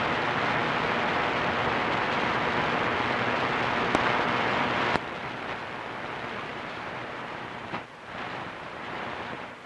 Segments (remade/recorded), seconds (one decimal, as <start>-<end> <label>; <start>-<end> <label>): 0.0-6.5 recorded; 6.5-9.7 remade